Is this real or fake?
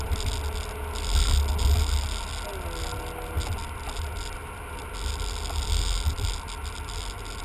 real